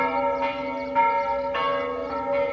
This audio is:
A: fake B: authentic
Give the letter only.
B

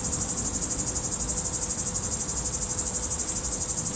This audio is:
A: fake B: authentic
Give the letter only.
B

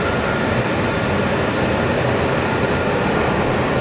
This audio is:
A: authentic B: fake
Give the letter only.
A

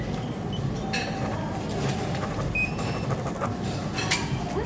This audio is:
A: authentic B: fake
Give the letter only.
A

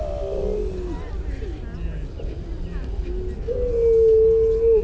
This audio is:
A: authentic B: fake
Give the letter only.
A